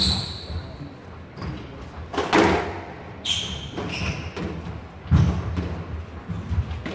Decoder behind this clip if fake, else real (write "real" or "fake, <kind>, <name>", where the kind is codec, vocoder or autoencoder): real